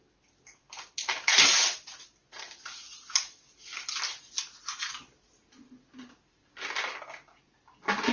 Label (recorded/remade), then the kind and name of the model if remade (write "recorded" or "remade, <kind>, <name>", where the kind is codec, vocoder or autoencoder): recorded